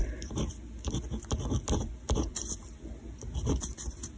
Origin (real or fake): real